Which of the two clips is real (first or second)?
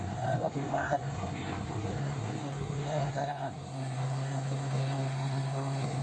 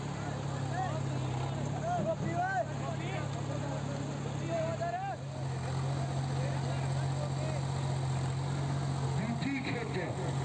second